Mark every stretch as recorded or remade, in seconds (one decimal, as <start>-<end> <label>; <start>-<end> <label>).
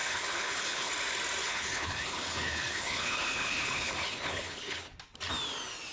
0.0-0.9 remade; 0.9-1.4 recorded; 1.4-4.9 remade; 4.9-5.9 recorded